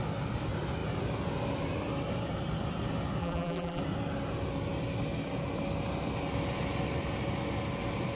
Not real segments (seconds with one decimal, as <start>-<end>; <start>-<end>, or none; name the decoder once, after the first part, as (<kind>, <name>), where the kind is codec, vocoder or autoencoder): 3.2-3.8 (vocoder, BigVGAN v2)